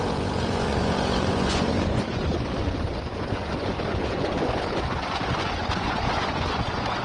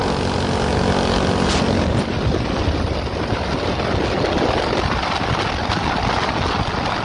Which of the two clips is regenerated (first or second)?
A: first